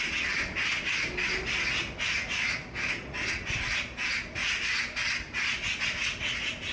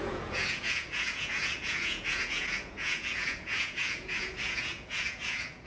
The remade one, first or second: second